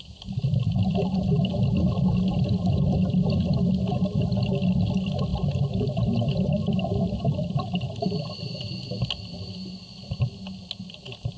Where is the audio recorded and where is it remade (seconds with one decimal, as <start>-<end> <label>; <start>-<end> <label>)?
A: 0.0-11.4 recorded